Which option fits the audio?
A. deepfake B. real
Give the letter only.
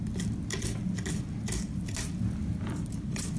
B